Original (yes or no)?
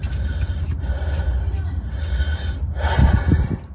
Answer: yes